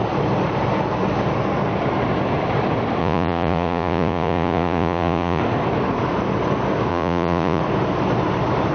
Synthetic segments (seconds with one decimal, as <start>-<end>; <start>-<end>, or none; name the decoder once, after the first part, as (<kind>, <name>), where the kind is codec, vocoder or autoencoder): 3.0-5.4 (vocoder, Vocos); 6.9-7.6